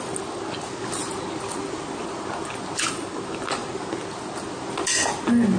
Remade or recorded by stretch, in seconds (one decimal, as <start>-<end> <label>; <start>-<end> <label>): 0.0-5.6 recorded